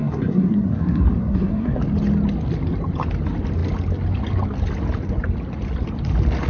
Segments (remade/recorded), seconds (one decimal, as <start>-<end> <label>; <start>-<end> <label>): 0.0-1.8 remade; 1.8-6.5 recorded